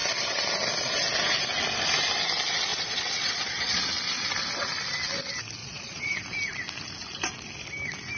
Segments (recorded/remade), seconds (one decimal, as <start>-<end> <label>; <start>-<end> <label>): 0.0-2.7 recorded; 2.7-3.9 remade; 3.9-5.6 recorded; 5.6-6.2 remade; 6.2-8.2 recorded